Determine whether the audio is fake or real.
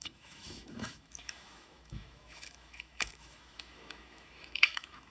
fake